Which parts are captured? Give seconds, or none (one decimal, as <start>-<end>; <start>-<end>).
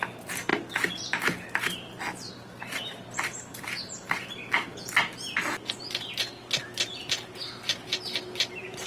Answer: 0.0-8.9